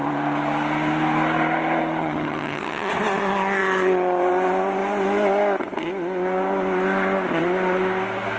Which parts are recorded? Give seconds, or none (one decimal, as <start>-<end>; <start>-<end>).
0.0-2.0; 2.9-8.4